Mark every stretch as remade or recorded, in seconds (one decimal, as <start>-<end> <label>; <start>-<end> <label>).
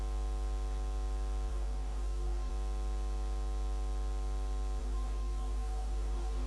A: 0.0-1.5 recorded; 1.5-2.5 remade; 2.5-4.8 recorded; 4.8-6.5 remade